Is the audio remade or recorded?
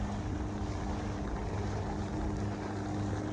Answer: recorded